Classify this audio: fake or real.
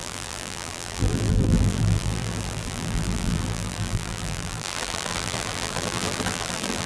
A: fake